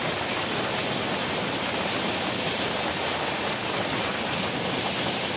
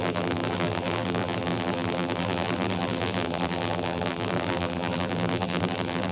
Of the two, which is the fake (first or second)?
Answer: second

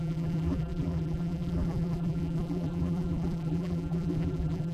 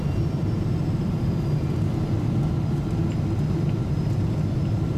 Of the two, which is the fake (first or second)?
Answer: first